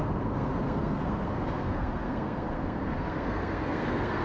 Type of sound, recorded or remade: remade